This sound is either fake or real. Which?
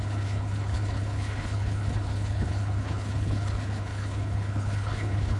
fake